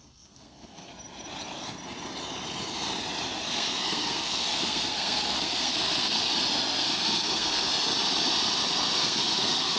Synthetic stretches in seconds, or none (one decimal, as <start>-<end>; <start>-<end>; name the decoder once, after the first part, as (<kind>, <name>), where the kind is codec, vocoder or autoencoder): 0.0-0.9 (codec, SNAC); 3.4-6.2; 6.8-7.7; 9.0-9.8